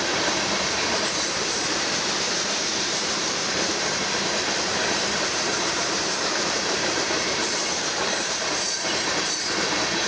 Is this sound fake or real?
fake